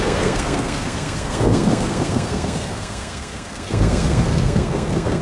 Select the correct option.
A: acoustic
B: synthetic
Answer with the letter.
B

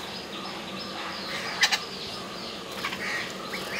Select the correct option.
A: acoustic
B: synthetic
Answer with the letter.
A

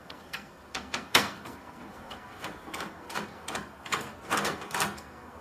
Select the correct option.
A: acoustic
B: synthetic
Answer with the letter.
B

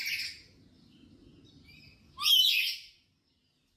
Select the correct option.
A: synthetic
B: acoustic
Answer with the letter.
B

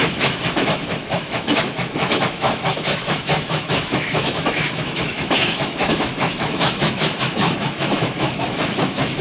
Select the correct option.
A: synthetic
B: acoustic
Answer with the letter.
A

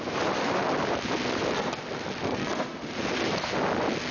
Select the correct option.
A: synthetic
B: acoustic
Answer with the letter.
B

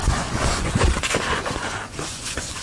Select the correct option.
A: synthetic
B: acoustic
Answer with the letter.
A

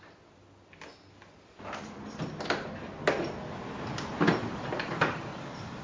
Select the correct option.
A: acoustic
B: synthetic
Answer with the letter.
A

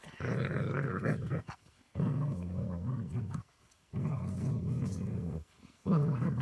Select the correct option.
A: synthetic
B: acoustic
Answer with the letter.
A